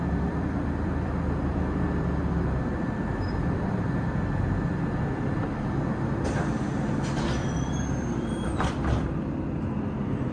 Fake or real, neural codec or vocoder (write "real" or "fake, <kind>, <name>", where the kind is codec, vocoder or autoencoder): fake, vocoder, BigVGAN v2